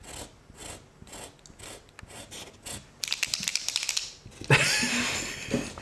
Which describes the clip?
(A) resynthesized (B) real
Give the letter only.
B